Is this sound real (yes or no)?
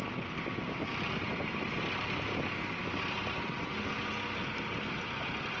yes